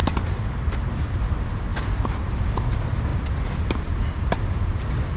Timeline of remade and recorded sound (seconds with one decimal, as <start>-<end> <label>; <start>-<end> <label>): 0.0-1.7 recorded; 1.7-2.4 remade; 2.4-5.2 recorded